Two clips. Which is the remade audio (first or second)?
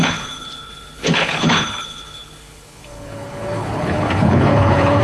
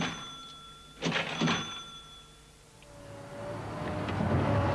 first